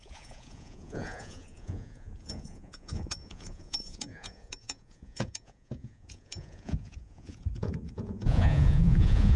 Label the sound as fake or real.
fake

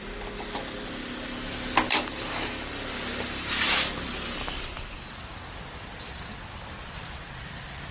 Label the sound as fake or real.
real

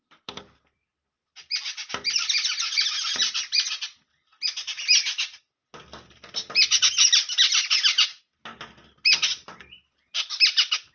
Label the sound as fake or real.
real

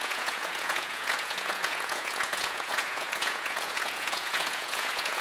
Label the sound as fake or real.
fake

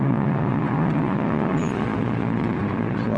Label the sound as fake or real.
fake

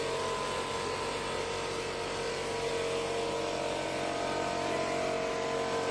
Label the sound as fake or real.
real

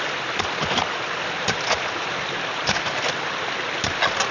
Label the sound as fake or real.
real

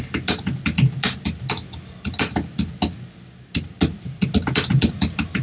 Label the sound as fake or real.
real